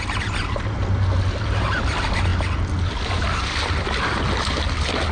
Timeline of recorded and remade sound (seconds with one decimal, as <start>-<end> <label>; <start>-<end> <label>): 0.0-5.1 recorded